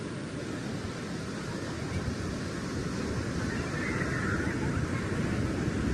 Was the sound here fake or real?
real